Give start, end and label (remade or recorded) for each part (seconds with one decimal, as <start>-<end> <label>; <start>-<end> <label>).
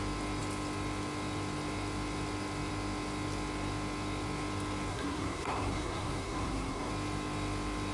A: 0.0-4.9 recorded; 4.9-6.9 remade; 6.9-7.9 recorded